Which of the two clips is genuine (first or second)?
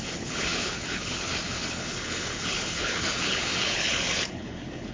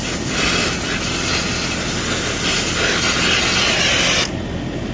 second